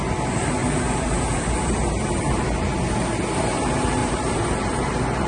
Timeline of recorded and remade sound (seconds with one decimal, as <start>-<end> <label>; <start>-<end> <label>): 0.0-0.6 recorded; 0.6-2.8 remade; 2.8-4.0 recorded; 4.0-5.3 remade